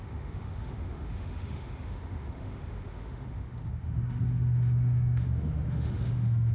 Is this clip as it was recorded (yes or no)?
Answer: no